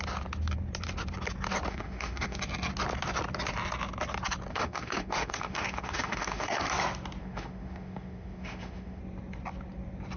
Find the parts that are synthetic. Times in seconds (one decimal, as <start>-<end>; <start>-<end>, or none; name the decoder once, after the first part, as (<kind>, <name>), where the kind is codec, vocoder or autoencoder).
1.7-2.4 (autoencoder, DAC-VAE); 4.5-6.7; 7.2-9.0